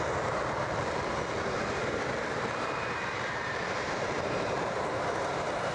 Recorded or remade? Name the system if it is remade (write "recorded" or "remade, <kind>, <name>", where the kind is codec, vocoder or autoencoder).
remade, vocoder, BigVGAN v2